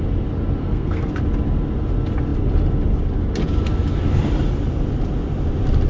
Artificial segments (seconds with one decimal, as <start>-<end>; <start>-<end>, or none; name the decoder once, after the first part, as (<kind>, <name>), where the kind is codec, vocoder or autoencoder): 0.6-1.1 (codec, SNAC)